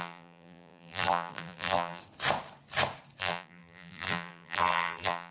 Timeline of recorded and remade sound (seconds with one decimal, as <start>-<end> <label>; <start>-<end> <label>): 0.0-2.0 remade; 2.0-3.2 recorded; 3.2-5.3 remade